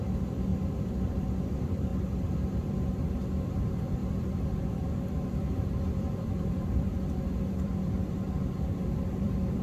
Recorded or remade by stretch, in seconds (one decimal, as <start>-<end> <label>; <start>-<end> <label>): 0.0-9.6 remade